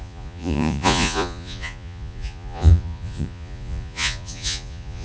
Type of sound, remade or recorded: remade